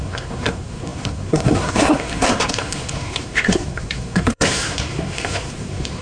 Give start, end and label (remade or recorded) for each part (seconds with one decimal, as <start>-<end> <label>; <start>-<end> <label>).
0.0-6.0 remade